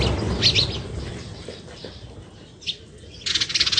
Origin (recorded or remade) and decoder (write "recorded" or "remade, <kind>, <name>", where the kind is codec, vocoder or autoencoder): recorded